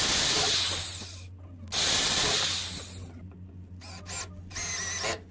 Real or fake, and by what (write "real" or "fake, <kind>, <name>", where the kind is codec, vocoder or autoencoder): real